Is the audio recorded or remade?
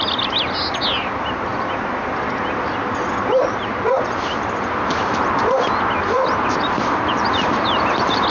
recorded